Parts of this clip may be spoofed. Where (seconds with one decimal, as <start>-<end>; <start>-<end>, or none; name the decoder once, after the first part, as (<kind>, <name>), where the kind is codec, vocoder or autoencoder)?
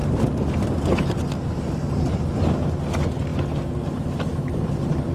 none